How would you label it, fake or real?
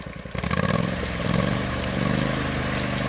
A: real